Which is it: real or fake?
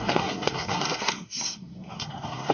fake